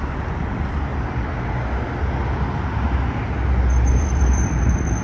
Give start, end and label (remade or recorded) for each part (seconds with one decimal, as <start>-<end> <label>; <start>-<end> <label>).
0.0-0.9 remade; 0.9-3.9 recorded; 3.9-5.0 remade